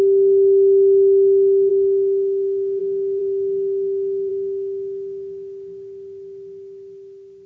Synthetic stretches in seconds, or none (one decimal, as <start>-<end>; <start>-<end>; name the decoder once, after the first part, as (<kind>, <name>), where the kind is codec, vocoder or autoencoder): 1.7-2.8 (codec, SNAC)